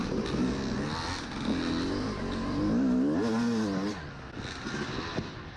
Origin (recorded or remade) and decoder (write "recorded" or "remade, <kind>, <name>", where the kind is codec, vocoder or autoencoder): recorded